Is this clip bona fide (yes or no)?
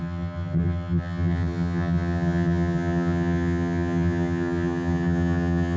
no